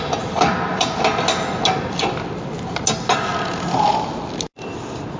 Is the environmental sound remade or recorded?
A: recorded